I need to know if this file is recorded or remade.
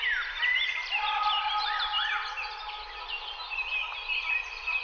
recorded